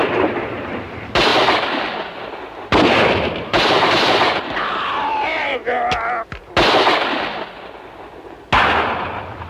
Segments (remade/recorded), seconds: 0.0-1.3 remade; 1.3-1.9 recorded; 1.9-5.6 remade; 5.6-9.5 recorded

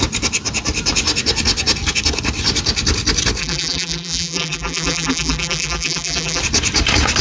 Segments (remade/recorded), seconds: 0.0-3.4 recorded; 3.4-6.4 remade; 6.4-7.2 recorded

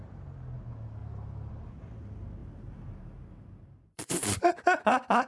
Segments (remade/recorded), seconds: 0.0-1.0 recorded; 1.0-1.5 remade; 1.5-2.4 recorded; 2.4-4.8 remade; 4.8-5.3 recorded

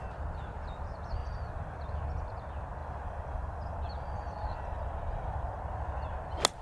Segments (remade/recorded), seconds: 0.0-1.2 recorded; 1.2-1.9 remade; 1.9-2.8 recorded; 2.8-5.6 remade; 5.6-6.6 recorded

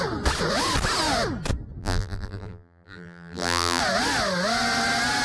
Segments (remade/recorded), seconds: 0.0-1.8 recorded; 1.8-3.8 remade; 3.8-5.2 recorded

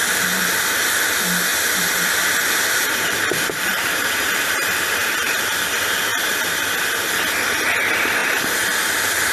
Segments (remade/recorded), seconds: 0.0-1.5 recorded; 1.5-5.6 remade; 5.6-9.3 recorded

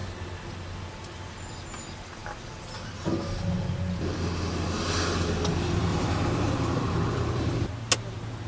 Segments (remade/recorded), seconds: 0.0-5.9 recorded; 5.9-7.7 remade; 7.7-8.5 recorded

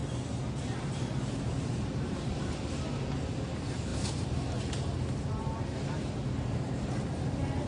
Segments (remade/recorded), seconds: 0.0-2.6 remade; 2.6-3.9 recorded; 3.9-6.7 remade; 6.7-7.7 recorded